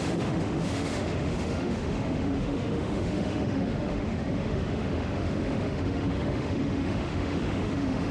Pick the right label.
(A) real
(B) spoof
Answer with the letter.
B